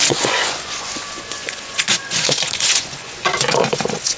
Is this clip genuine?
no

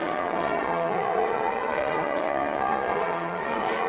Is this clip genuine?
no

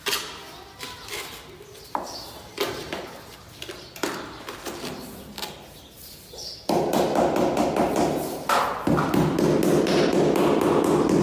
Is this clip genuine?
yes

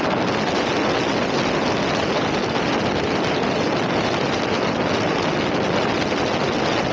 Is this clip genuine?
yes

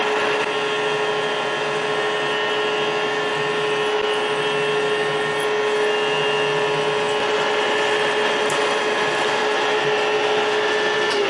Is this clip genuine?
yes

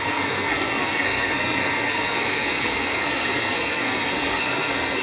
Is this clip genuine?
no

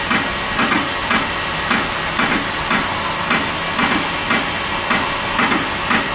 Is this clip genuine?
yes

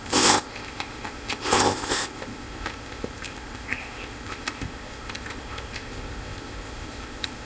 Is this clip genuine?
no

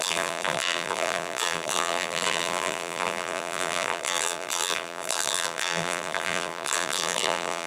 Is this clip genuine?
no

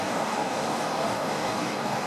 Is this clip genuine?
no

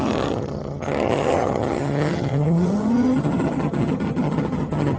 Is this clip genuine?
no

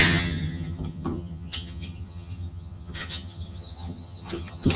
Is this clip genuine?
no